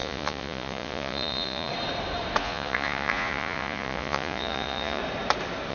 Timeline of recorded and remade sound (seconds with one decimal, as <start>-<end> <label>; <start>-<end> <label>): 0.0-1.7 remade; 1.7-2.4 recorded; 2.4-5.0 remade; 5.0-5.7 recorded